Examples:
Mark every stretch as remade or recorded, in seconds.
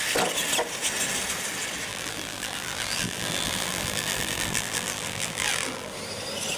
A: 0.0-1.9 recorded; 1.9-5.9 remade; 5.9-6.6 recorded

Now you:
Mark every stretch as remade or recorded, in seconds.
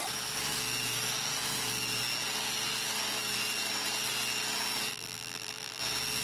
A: 0.0-4.9 recorded; 4.9-5.8 remade; 5.8-6.2 recorded